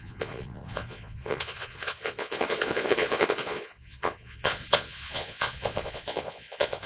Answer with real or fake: fake